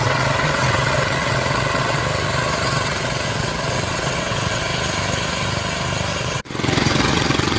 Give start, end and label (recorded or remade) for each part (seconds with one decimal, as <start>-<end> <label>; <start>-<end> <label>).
0.0-2.0 remade; 2.0-2.6 recorded; 2.6-4.7 remade; 4.7-6.2 recorded; 6.2-7.6 remade